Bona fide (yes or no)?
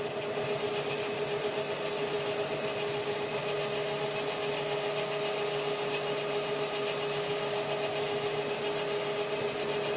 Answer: yes